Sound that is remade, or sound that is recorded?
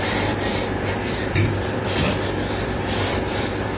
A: recorded